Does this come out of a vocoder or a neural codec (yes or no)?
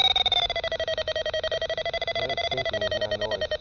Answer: yes